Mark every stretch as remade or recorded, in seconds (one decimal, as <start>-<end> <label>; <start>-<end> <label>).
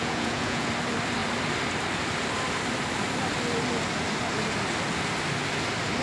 0.0-0.7 remade; 0.7-6.0 recorded